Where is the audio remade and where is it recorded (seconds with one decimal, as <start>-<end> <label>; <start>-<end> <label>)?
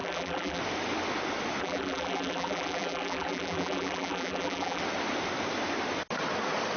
0.0-0.6 remade; 0.6-1.6 recorded; 1.6-4.8 remade; 4.8-6.8 recorded